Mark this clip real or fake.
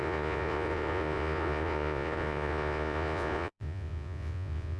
fake